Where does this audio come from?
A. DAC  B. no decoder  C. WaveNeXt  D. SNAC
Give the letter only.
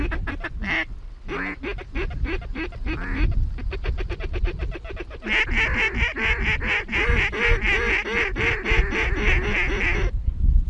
B